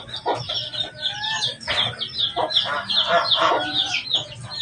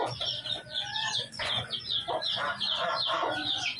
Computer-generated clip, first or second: second